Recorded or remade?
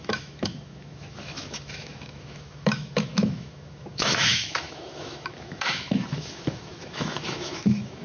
remade